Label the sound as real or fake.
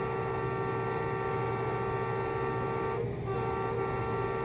real